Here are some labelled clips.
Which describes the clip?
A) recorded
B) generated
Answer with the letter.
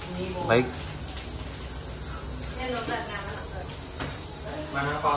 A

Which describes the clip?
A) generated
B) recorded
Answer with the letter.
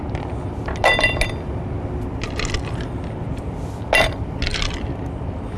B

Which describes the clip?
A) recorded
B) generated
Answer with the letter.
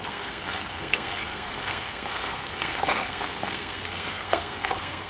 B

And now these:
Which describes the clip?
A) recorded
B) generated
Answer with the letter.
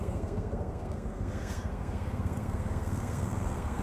B